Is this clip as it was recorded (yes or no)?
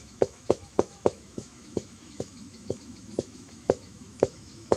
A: no